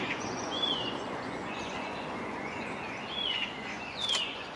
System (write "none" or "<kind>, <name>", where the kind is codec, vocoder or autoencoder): vocoder, Vocos